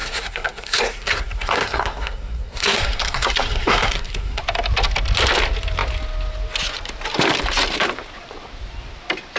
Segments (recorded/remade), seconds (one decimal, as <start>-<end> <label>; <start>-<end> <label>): 0.0-4.4 remade; 4.4-9.4 recorded